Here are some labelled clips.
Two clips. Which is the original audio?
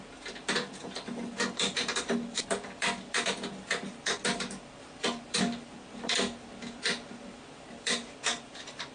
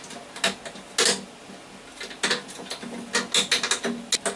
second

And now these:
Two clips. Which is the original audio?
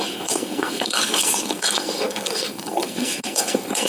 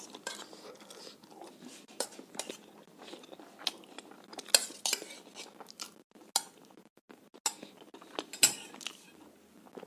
second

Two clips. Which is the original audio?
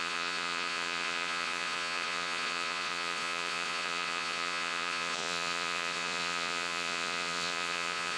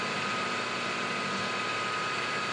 second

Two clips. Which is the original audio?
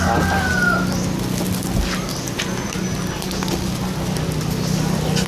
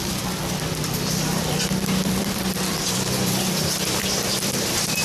first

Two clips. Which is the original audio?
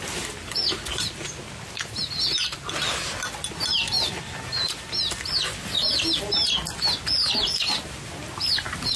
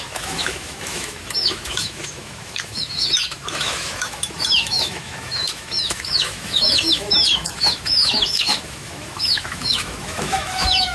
first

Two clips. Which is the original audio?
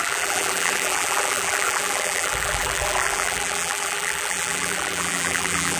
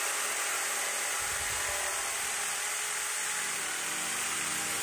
second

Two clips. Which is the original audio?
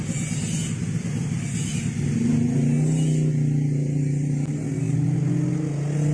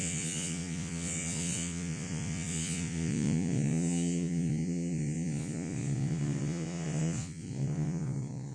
first